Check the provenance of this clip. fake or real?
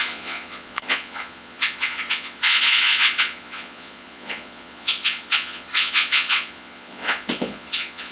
fake